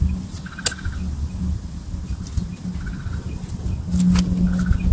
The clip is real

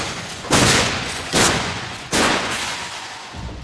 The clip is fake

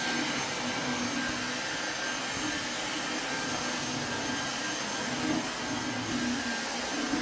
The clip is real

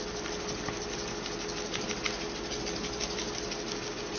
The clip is real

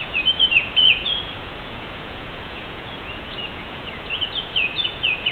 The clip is fake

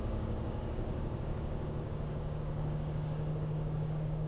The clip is fake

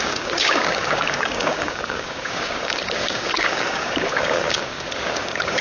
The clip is fake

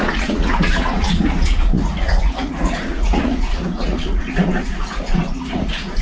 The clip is fake